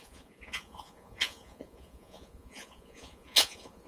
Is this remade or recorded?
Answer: remade